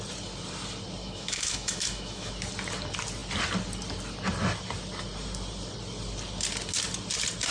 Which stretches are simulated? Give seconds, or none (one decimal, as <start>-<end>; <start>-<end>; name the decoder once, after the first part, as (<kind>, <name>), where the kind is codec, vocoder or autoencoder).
1.0-2.3 (autoencoder, DAC-VAE)

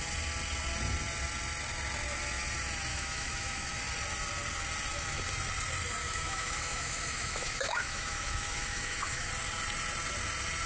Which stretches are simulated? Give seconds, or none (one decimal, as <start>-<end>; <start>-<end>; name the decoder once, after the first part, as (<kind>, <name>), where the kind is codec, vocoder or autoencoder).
2.9-3.8 (autoencoder, DAC-VAE); 6.0-9.3